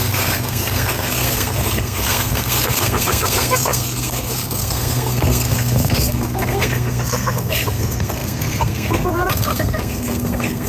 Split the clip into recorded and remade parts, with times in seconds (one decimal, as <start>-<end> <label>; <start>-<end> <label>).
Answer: 0.0-10.7 remade